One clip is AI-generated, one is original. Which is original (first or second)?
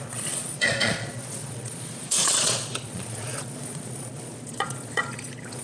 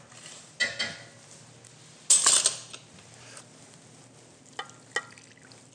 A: second